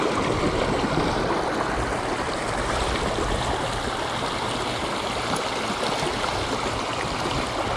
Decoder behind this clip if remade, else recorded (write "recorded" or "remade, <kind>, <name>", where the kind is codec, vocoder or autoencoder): recorded